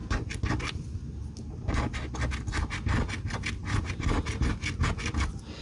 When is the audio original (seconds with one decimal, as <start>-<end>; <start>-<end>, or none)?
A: 0.0-3.6; 4.5-5.6